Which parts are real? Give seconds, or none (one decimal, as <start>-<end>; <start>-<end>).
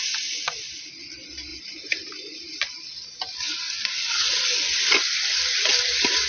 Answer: 0.0-1.5; 3.1-5.0; 5.7-6.3